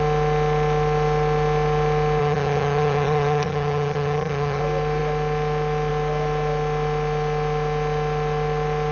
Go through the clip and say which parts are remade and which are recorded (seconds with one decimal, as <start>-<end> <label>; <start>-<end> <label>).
0.0-2.2 recorded; 2.2-4.6 remade; 4.6-8.9 recorded